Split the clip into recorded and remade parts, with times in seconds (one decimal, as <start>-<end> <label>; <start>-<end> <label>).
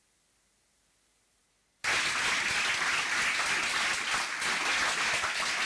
0.0-5.7 recorded